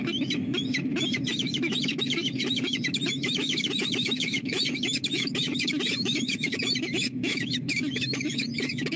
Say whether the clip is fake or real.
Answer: fake